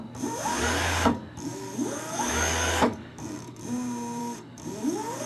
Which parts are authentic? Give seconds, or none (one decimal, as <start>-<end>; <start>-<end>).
0.0-0.5; 3.6-4.2